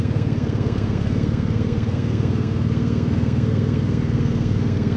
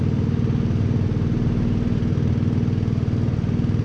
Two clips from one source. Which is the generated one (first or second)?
first